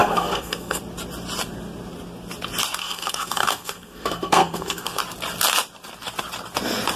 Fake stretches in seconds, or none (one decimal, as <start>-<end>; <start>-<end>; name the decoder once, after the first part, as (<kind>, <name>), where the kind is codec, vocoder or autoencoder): 0.0-0.8 (codec, SNAC); 2.8-5.0

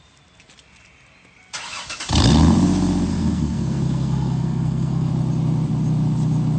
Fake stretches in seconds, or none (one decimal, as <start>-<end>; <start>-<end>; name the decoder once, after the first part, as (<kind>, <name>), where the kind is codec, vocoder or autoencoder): 3.1-5.1 (codec, SNAC)

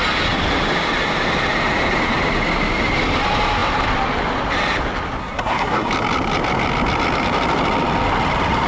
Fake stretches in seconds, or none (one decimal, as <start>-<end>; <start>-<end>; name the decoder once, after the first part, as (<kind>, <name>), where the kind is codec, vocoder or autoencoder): 5.2-5.9 (codec, SNAC)

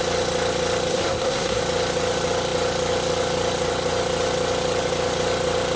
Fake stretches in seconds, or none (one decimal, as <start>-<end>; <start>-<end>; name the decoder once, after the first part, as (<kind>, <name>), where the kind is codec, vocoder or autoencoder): 0.9-1.6 (codec, SNAC)

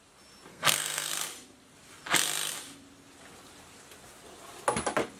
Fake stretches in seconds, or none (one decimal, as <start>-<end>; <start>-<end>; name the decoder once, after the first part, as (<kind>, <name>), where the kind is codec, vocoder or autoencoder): 0.5-1.1 (codec, SNAC)

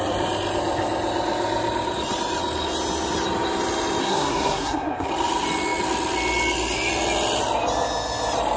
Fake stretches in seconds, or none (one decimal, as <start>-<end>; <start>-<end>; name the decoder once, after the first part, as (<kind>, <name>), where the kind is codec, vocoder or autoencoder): 4.0-5.1 (codec, SNAC)